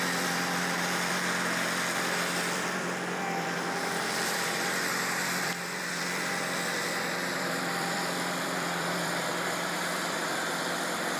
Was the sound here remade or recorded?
remade